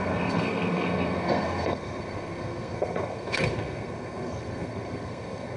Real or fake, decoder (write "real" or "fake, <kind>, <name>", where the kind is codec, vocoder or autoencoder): fake, codec, SNAC